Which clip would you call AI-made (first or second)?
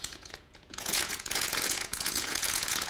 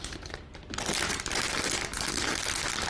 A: first